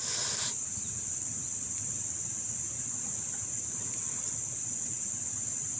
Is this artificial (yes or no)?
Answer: no